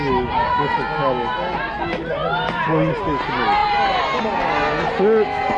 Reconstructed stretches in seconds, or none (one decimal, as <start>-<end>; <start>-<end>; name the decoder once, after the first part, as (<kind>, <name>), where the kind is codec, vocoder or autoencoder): none